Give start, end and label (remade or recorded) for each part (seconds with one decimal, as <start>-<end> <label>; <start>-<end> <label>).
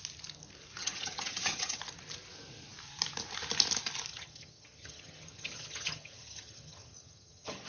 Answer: 0.0-0.8 recorded; 0.8-1.8 remade; 1.8-4.1 recorded; 4.1-7.7 remade